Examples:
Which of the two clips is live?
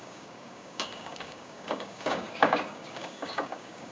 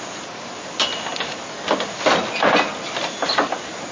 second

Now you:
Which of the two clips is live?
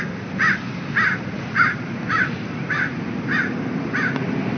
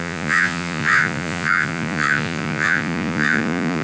first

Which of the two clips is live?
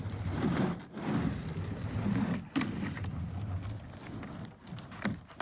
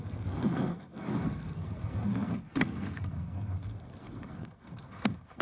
first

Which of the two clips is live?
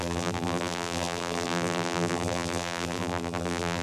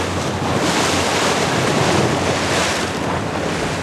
second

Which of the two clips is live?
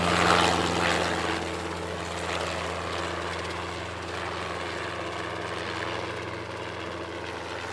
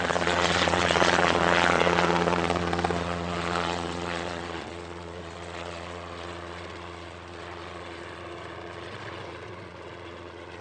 first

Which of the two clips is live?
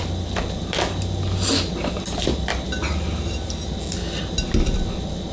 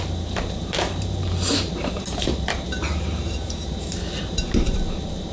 first